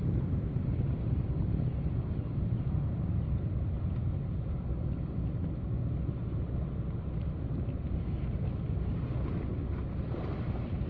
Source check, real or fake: real